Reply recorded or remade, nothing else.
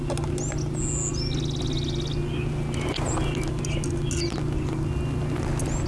recorded